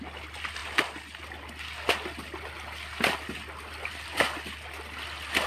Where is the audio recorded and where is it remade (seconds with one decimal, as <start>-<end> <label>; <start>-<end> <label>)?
0.0-5.5 recorded